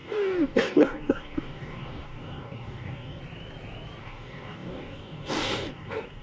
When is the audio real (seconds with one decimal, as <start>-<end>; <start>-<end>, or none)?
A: 3.2-4.0